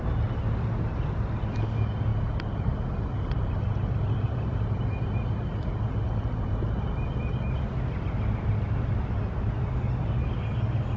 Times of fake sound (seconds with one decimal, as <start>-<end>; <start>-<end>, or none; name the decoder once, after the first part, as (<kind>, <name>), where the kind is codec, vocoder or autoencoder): none